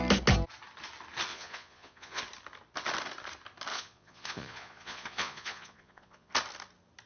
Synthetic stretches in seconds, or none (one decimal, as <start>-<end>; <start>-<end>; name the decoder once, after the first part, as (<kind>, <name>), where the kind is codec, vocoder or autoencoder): 1.3-2.2 (vocoder, Vocos); 3.7-6.3